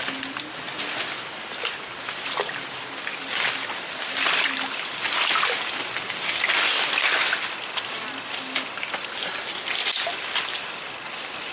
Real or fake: real